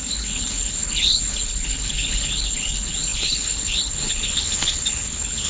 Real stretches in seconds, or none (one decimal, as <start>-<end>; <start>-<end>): none